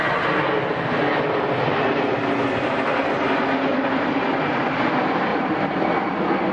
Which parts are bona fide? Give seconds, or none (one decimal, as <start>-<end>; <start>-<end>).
0.0-1.1; 1.8-3.7; 4.4-5.3; 6.1-6.5